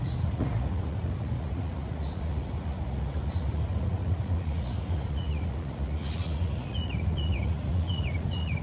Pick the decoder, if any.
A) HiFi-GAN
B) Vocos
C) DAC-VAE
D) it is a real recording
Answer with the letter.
B